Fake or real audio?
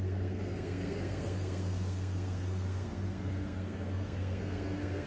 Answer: fake